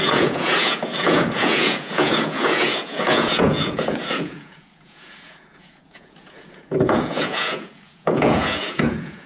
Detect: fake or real fake